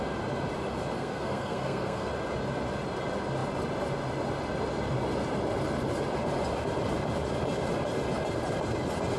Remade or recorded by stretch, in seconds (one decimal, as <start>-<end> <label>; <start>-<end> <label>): 0.0-0.9 recorded; 0.9-2.1 remade; 2.1-9.2 recorded